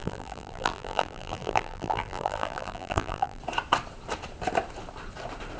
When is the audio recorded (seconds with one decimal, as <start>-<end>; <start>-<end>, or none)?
3.4-5.6